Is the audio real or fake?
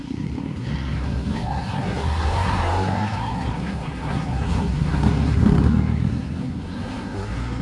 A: fake